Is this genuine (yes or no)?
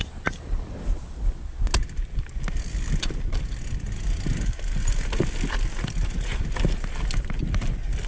yes